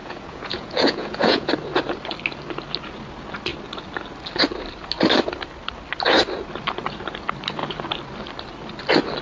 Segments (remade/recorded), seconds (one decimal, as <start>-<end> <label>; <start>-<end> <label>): 0.0-1.5 remade; 1.5-9.2 recorded